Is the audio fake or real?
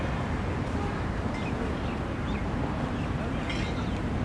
real